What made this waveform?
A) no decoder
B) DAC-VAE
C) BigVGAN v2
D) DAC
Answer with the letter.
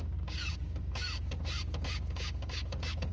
D